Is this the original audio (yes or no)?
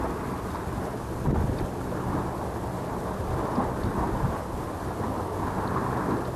yes